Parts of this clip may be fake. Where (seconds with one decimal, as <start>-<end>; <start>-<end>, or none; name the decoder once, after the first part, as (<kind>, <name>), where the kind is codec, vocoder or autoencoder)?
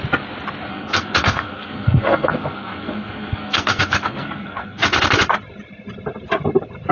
0.7-4.8 (codec, SNAC)